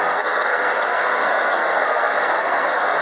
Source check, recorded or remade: remade